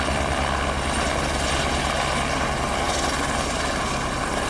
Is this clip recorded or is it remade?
recorded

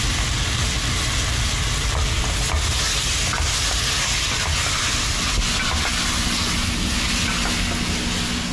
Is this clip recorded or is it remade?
recorded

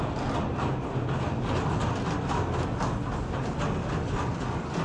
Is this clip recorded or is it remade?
recorded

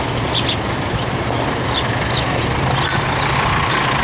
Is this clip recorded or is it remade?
recorded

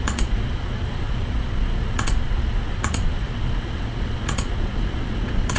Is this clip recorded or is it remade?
remade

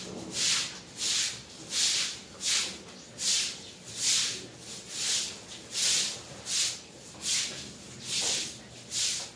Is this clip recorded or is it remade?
recorded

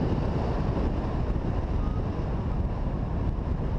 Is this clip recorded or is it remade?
recorded